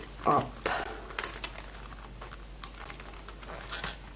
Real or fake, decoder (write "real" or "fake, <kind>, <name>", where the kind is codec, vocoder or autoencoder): real